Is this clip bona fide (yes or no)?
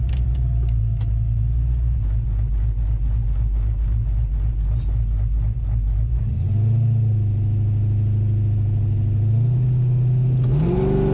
yes